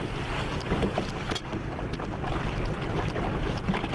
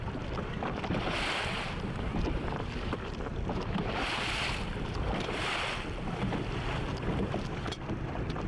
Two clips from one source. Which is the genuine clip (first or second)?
first